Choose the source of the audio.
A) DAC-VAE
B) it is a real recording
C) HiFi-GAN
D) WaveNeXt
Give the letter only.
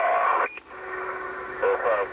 B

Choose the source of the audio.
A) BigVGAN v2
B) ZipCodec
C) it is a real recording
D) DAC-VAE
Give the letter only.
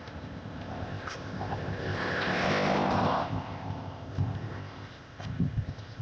B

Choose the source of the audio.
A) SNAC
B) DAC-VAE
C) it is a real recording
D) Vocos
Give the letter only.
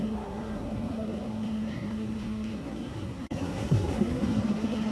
A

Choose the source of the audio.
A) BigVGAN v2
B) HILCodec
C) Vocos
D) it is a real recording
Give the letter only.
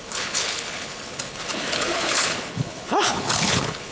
B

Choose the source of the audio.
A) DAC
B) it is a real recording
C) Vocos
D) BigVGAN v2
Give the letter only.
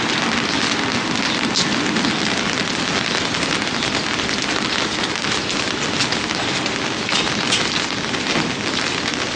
B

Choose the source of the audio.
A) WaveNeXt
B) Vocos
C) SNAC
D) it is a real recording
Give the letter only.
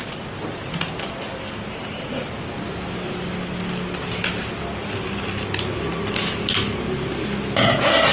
D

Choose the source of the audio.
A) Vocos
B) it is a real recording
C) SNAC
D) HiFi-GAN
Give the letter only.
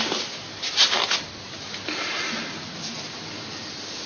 B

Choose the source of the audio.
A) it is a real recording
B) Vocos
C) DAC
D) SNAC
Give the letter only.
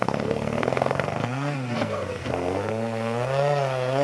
D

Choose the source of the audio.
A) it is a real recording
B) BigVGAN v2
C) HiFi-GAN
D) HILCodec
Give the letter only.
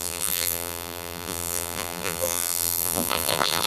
B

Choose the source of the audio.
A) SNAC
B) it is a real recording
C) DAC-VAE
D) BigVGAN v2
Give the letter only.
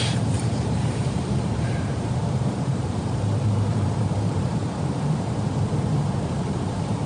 D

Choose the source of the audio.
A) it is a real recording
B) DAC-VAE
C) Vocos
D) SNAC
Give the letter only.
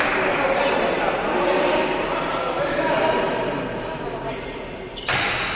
A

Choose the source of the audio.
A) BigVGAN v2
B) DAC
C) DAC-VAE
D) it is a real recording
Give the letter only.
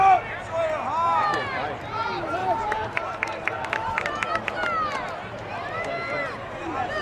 D